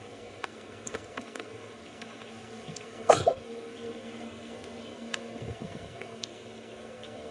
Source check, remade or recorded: remade